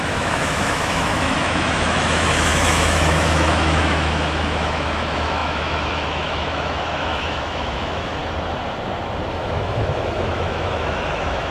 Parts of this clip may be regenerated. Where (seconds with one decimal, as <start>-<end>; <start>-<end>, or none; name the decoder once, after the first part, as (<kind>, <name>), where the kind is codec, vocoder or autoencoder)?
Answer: 0.0-8.2 (autoencoder, DAC-VAE); 9.3-11.5